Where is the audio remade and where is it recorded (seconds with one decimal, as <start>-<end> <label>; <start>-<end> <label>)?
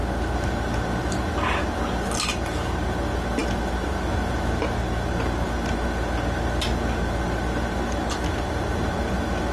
0.0-9.5 recorded